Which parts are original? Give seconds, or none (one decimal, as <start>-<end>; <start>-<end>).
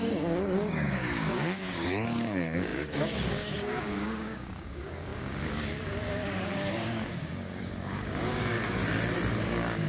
8.8-9.4